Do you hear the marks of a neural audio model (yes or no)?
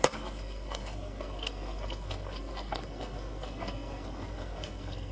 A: yes